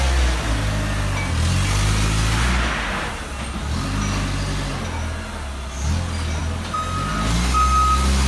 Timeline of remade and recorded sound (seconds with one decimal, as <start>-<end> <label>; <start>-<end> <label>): 0.0-8.3 recorded